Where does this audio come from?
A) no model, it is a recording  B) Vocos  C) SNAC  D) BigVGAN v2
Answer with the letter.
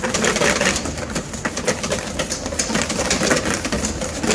A